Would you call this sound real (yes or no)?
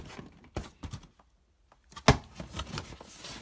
yes